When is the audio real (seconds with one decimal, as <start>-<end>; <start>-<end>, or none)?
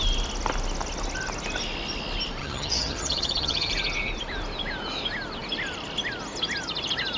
0.0-2.4; 3.7-7.2